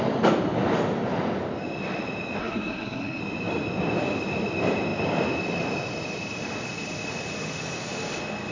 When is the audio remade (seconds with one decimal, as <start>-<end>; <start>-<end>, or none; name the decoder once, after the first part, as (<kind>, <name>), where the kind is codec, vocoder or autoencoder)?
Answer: 2.4-3.2 (codec, SNAC)